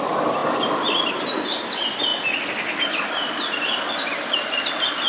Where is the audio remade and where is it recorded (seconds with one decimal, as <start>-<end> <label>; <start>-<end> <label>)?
0.0-5.1 recorded